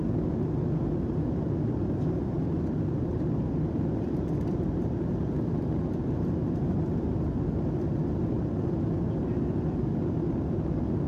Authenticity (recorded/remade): recorded